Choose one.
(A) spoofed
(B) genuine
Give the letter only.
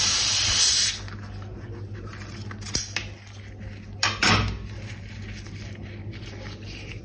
B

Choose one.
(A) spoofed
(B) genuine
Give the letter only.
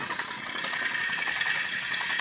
A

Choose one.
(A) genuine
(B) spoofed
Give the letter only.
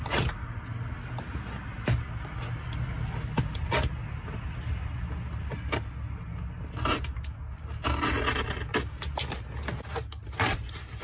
A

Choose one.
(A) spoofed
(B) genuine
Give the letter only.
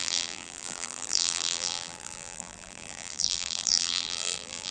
A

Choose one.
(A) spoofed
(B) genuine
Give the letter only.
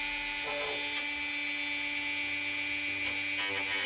B